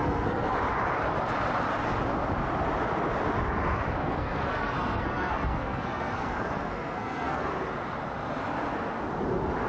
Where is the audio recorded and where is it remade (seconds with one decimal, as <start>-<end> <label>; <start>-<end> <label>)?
0.0-0.6 remade; 0.6-4.0 recorded; 4.0-7.5 remade; 7.5-9.7 recorded